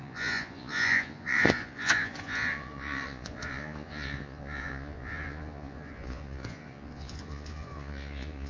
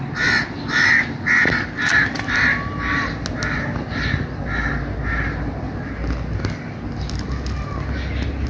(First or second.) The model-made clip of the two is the first